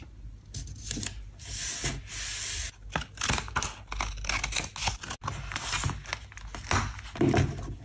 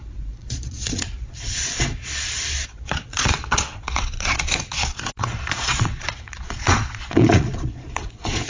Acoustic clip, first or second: first